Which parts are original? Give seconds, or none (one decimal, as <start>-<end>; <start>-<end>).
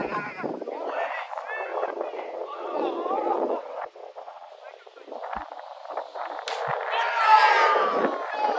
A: 0.0-1.7; 4.5-8.6